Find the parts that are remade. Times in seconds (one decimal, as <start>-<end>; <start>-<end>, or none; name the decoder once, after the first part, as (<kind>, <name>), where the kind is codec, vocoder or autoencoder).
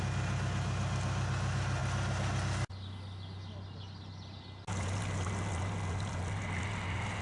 none